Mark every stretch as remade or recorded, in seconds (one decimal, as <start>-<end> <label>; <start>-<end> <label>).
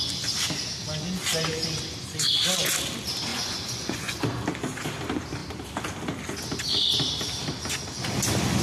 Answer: 0.0-3.3 recorded; 3.3-4.2 remade; 4.2-8.6 recorded